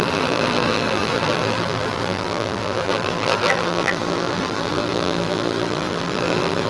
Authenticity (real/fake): fake